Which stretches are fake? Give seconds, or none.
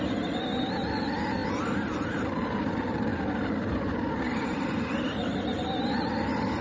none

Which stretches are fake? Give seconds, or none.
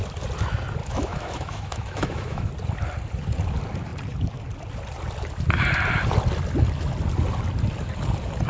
0.8-2.5 (autoencoder, DAC-VAE)